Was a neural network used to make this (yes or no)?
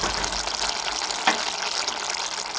no